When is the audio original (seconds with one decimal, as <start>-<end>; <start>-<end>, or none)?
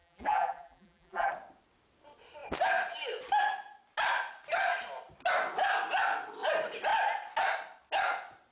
1.3-8.5